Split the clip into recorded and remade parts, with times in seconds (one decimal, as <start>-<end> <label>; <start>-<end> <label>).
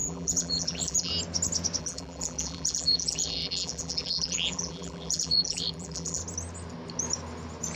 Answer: 0.0-1.1 remade; 1.1-1.8 recorded; 1.8-6.2 remade; 6.2-7.8 recorded